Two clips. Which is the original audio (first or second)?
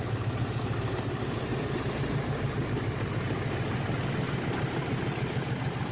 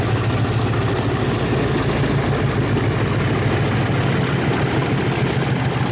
second